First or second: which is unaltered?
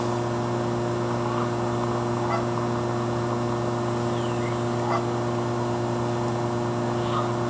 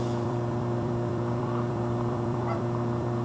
first